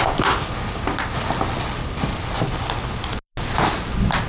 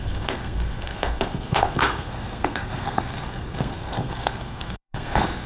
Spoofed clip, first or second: second